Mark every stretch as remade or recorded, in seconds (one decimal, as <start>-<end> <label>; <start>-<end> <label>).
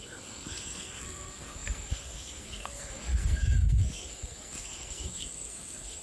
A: 0.0-6.0 remade